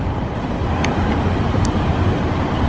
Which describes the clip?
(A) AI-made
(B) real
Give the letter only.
A